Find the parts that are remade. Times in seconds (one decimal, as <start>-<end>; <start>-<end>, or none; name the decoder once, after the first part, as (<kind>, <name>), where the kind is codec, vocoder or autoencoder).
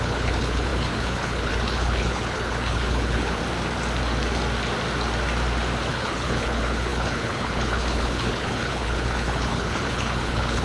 0.0-3.4 (codec, HILCodec); 5.9-10.6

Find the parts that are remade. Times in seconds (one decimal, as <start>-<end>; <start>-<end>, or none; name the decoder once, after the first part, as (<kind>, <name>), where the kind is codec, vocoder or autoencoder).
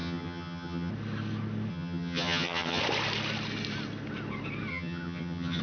0.0-0.9 (vocoder, HiFi-GAN); 1.7-2.8; 4.7-5.6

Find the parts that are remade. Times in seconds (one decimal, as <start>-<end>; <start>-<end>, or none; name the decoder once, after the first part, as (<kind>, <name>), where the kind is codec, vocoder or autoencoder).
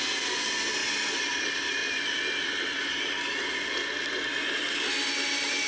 none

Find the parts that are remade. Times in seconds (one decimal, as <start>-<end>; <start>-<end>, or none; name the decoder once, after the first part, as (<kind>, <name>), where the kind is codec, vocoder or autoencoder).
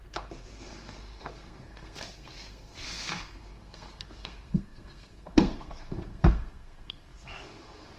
0.0-8.0 (codec, SNAC)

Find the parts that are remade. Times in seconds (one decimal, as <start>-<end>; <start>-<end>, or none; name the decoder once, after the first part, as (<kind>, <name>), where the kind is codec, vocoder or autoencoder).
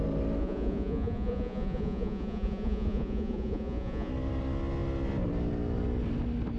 0.4-4.1 (vocoder, Vocos)